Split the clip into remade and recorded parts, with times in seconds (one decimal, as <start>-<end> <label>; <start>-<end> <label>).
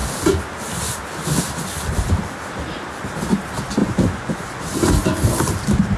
0.0-3.8 recorded; 3.8-4.6 remade; 4.6-6.0 recorded